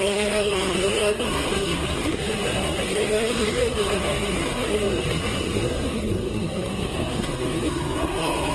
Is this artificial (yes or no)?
yes